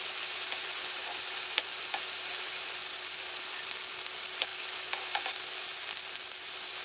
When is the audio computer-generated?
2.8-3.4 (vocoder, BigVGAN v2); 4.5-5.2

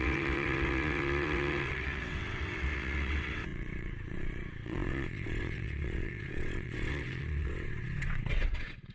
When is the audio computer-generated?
0.0-8.9 (vocoder, WaveNeXt)